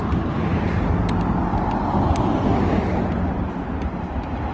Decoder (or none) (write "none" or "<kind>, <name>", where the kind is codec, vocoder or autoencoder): none